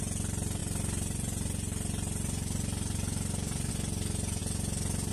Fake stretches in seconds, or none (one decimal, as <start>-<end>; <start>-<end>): none